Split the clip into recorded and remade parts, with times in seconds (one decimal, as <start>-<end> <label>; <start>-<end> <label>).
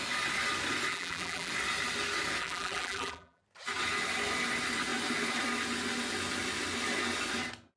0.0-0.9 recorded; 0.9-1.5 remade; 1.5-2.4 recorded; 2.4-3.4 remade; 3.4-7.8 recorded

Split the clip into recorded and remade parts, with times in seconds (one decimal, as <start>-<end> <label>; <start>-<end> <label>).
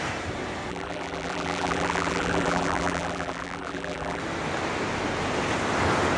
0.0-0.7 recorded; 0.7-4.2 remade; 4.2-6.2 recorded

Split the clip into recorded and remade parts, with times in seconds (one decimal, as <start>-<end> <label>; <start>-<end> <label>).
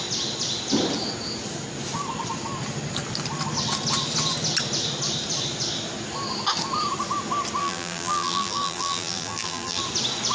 0.0-7.6 recorded; 7.6-9.8 remade; 9.8-10.3 recorded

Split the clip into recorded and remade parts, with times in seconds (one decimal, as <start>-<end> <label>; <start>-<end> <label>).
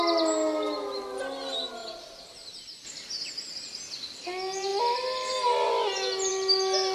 0.0-6.9 recorded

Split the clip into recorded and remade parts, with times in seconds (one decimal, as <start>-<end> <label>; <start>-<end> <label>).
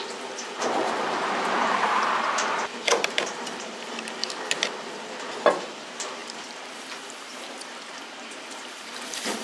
0.0-4.2 remade; 4.2-5.6 recorded; 5.6-9.4 remade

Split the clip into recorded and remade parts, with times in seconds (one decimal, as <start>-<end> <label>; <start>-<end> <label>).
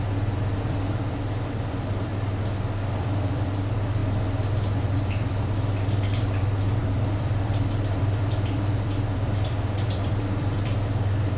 0.0-2.1 remade; 2.1-2.9 recorded; 2.9-4.0 remade; 4.0-4.8 recorded; 4.8-11.4 remade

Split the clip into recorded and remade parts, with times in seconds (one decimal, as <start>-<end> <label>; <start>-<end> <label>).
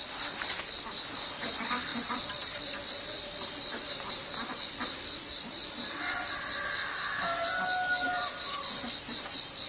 0.0-1.9 recorded; 1.9-4.1 remade; 4.1-4.5 recorded; 4.5-6.3 remade; 6.3-9.7 recorded